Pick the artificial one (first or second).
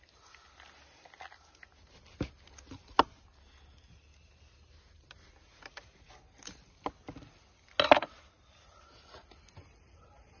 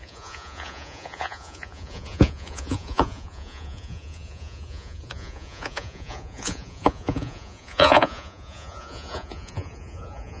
second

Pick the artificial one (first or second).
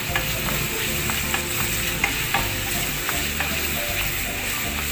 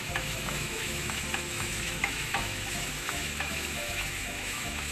second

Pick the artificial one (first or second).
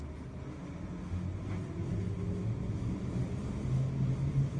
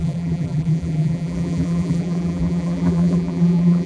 second